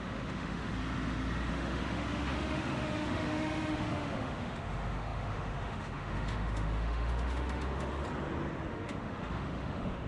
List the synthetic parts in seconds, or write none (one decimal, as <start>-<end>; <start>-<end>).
0.0-0.7; 1.5-8.0; 8.7-10.1